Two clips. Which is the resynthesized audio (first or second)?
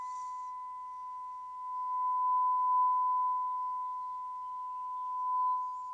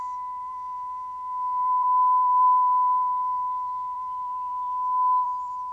second